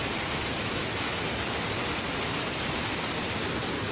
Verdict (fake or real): real